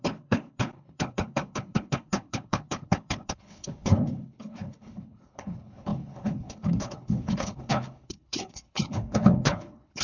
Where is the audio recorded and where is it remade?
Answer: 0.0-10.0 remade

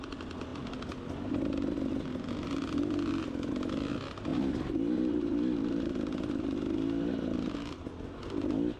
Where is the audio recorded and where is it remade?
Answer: 0.0-8.8 recorded

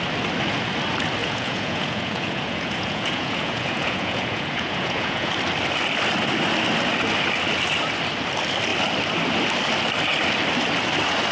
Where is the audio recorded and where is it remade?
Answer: 0.0-1.2 recorded; 1.2-5.3 remade; 5.3-11.3 recorded

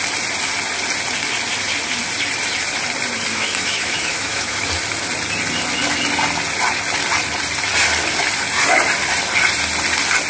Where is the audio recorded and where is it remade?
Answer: 0.0-3.3 recorded; 3.3-4.7 remade; 4.7-10.3 recorded